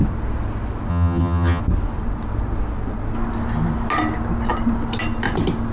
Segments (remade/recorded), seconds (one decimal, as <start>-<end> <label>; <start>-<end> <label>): 0.0-0.9 recorded; 0.9-1.6 remade; 1.6-5.7 recorded